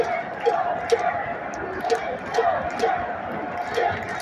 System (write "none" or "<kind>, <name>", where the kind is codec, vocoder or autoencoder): none